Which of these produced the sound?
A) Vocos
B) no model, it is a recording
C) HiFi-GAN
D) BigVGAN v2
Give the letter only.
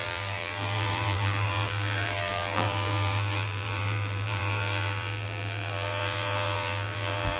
D